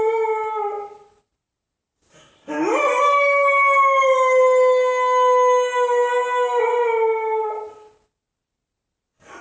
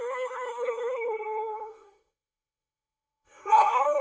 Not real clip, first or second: second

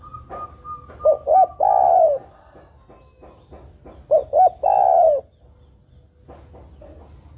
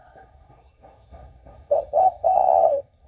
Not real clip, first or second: second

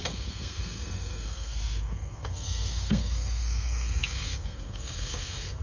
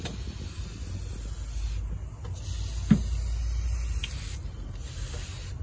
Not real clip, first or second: first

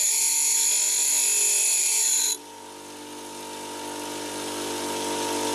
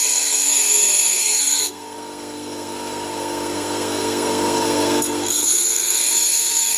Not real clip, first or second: second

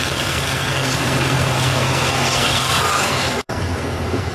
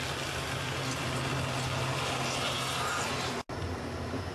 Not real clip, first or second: first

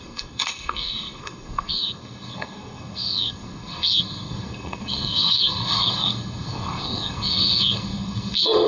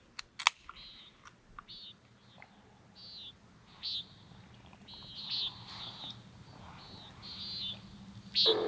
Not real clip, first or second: first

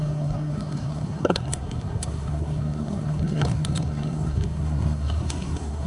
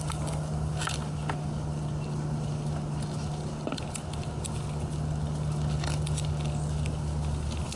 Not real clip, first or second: first